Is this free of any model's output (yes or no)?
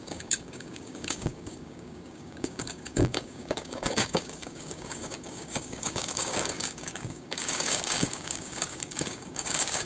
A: no